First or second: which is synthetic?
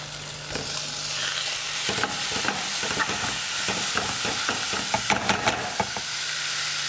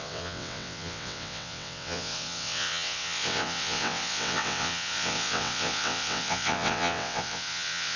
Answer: second